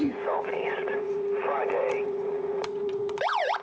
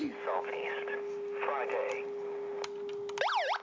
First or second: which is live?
second